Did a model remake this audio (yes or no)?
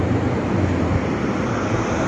no